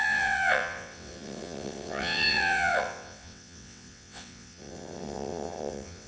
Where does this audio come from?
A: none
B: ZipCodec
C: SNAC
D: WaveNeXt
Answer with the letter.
D